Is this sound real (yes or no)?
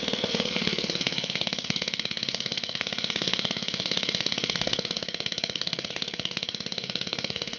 no